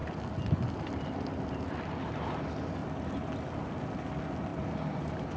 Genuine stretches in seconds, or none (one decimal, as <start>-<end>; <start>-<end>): 0.0-2.8; 3.7-4.5